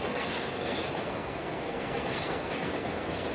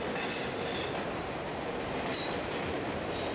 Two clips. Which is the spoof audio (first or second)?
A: first